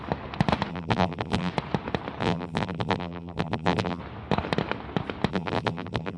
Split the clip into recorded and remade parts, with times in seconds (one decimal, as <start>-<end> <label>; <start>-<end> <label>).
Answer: 0.0-0.7 recorded; 0.7-1.5 remade; 1.5-2.2 recorded; 2.2-4.0 remade; 4.0-5.3 recorded; 5.3-6.2 remade